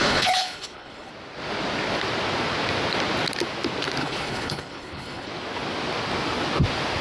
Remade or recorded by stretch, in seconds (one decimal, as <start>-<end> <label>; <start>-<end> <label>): 0.0-1.1 remade; 1.1-4.0 recorded; 4.0-5.3 remade; 5.3-7.0 recorded